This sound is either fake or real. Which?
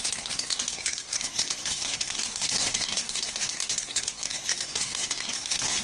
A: fake